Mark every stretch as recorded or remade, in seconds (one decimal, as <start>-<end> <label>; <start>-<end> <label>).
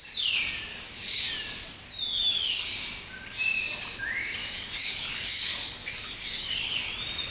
0.0-0.7 recorded; 0.7-1.3 remade; 1.3-2.1 recorded; 2.1-2.8 remade; 2.8-4.4 recorded; 4.4-6.8 remade; 6.8-7.3 recorded